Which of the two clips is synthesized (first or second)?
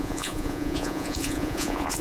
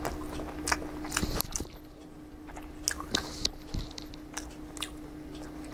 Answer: first